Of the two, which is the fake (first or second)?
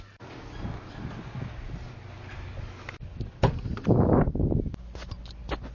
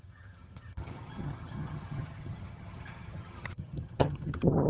second